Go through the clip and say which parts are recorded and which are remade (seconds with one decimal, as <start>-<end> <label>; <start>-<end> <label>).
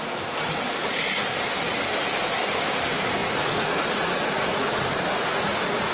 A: 0.0-3.2 recorded; 3.2-5.9 remade